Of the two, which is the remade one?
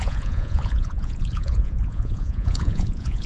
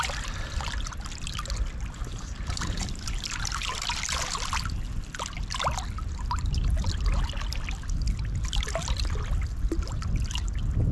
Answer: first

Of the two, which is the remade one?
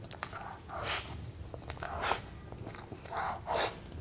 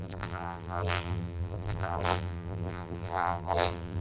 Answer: second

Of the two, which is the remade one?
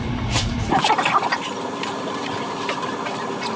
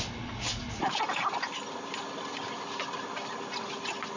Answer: first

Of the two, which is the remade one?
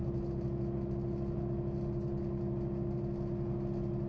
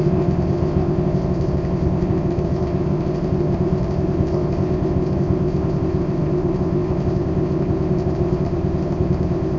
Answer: second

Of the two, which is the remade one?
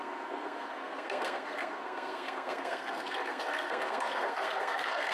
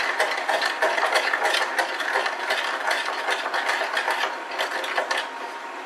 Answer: first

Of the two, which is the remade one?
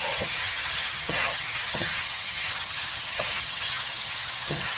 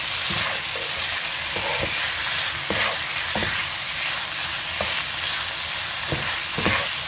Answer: first